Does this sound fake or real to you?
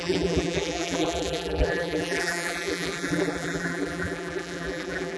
fake